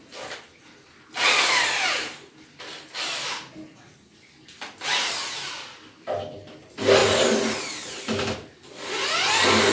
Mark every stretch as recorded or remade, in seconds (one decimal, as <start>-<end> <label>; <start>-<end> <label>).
0.0-9.7 recorded